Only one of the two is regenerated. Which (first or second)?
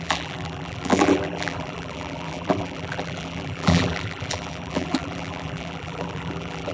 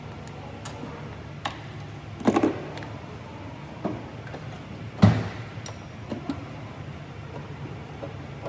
first